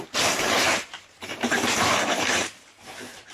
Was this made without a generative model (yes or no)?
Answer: no